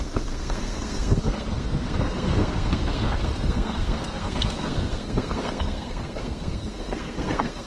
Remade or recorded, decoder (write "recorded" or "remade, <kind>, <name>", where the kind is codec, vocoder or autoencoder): remade, codec, SNAC